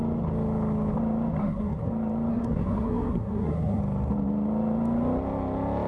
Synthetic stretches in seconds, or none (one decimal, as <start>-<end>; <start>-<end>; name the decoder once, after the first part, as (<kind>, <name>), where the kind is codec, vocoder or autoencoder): 1.4-1.9 (codec, SNAC); 2.3-3.8